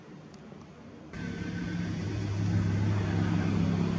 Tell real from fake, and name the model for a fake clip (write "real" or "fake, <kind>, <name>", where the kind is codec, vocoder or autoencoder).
real